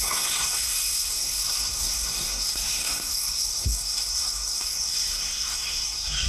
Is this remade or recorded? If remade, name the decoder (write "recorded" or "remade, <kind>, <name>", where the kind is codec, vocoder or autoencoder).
remade, codec, SNAC